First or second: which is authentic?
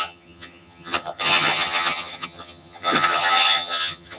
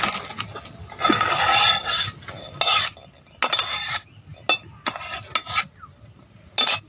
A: second